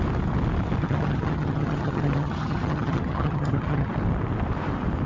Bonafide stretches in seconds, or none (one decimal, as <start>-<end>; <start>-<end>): 0.0-0.8; 3.9-5.1